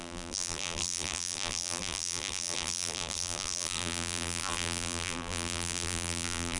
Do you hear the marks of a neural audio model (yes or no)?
yes